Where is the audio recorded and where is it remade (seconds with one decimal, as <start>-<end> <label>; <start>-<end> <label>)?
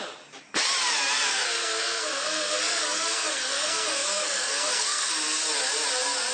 0.0-1.3 recorded; 1.3-5.1 remade; 5.1-6.3 recorded